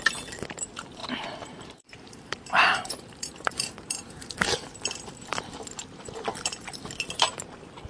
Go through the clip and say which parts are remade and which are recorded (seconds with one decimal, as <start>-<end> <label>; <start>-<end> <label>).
0.0-1.0 recorded; 1.0-4.8 remade; 4.8-7.9 recorded